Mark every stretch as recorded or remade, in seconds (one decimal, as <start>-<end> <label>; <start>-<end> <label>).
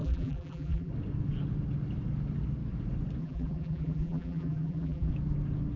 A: 0.0-0.9 remade; 0.9-3.2 recorded; 3.2-5.1 remade; 5.1-5.8 recorded